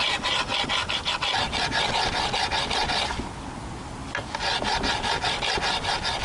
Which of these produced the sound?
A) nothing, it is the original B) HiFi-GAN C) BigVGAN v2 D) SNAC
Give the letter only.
A